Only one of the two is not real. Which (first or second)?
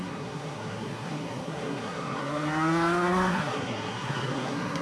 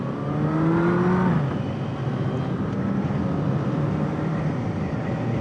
first